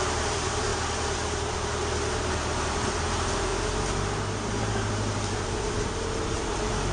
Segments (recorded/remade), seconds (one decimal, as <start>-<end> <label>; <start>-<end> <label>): 0.0-0.7 remade; 0.7-2.6 recorded; 2.6-3.5 remade; 3.5-4.6 recorded; 4.6-6.9 remade